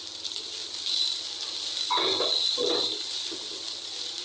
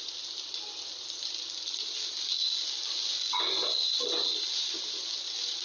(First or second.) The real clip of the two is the second